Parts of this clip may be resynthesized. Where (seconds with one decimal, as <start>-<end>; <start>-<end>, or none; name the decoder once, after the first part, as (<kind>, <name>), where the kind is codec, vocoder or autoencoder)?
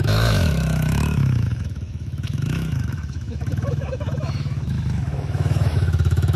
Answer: 0.0-6.4 (autoencoder, DAC-VAE)